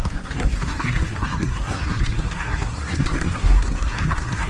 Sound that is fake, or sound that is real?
fake